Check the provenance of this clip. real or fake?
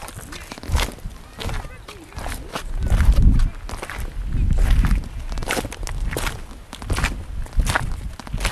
real